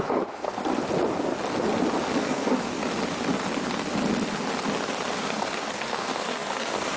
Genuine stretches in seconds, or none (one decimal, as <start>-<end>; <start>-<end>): 0.6-2.2; 2.7-5.1